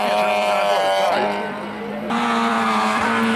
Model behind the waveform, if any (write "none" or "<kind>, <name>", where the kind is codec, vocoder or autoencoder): vocoder, BigVGAN v2